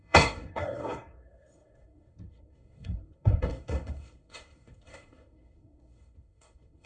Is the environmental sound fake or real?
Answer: fake